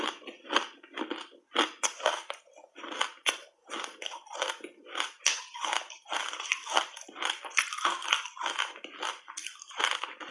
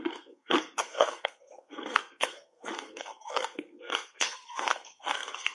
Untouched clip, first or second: first